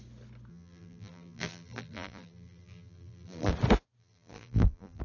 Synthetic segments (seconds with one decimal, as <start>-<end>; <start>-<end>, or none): 0.5-3.5; 4.0-5.0